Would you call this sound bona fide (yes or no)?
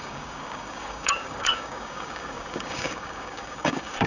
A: no